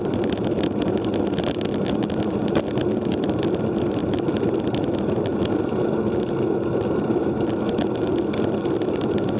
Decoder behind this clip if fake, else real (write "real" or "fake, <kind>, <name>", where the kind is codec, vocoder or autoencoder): real